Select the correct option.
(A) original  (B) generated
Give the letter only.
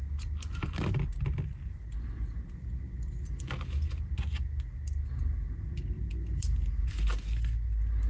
A